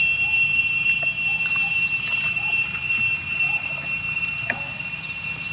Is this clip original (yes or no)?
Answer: yes